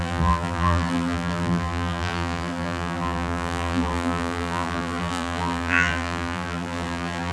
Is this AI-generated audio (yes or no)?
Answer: yes